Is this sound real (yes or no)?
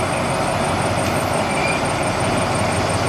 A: yes